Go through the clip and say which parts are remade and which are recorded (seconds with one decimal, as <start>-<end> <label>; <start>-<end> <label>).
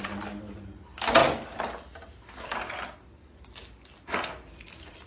0.0-5.1 recorded